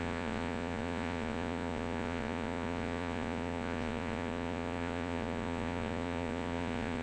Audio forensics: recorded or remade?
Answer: remade